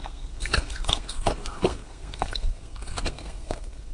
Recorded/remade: remade